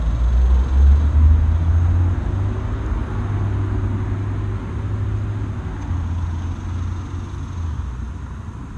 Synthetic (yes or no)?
no